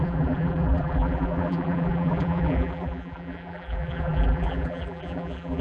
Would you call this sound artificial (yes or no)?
yes